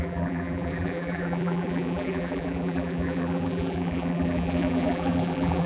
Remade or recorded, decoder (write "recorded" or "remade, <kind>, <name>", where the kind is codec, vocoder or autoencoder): remade, vocoder, BigVGAN v2